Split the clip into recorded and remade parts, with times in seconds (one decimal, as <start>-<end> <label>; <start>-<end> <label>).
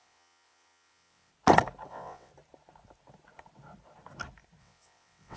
0.0-1.3 remade; 1.3-1.9 recorded; 1.9-2.3 remade; 2.3-4.6 recorded; 4.6-5.4 remade